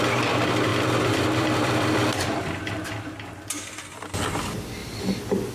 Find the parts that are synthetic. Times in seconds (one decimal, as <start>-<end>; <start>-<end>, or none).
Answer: 0.7-3.5; 4.8-5.5

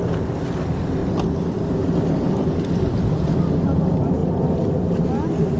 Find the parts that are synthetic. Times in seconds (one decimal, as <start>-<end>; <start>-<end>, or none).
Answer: none

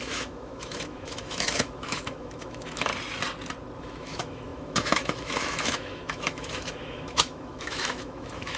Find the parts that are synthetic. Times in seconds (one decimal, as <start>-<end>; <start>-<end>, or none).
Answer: 0.0-2.9; 3.8-8.6

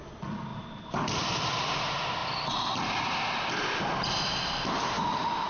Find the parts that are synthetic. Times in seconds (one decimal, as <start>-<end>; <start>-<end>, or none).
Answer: none

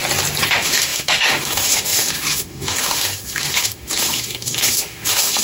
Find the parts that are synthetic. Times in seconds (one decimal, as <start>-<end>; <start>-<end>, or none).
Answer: 0.5-5.4

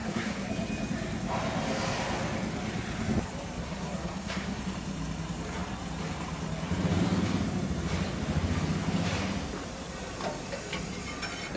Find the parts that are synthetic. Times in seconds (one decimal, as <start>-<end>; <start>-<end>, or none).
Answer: 0.0-0.5; 3.6-4.6

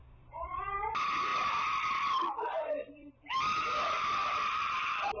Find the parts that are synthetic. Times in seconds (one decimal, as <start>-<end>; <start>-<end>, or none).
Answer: 0.0-1.3; 2.3-5.2

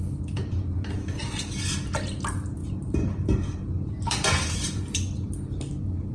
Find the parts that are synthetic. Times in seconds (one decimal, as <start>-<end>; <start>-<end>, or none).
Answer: 2.6-4.8